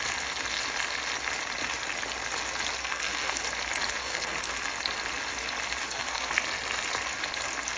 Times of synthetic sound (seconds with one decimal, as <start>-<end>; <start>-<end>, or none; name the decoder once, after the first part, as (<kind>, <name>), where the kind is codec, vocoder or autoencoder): 2.8-3.4 (codec, SNAC); 4.0-4.5; 5.8-6.3